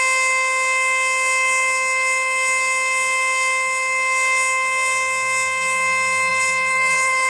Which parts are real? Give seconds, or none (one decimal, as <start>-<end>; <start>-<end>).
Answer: 0.0-6.3